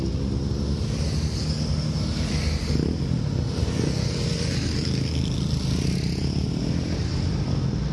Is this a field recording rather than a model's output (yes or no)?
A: yes